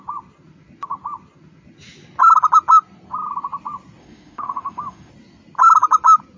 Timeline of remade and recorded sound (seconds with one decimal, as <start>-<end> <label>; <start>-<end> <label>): 0.0-4.0 recorded; 4.0-5.1 remade; 5.1-6.4 recorded